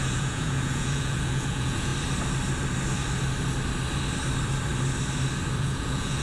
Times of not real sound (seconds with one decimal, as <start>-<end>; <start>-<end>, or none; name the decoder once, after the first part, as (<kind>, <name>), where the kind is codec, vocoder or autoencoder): 0.0-1.9 (vocoder, Vocos); 5.6-6.2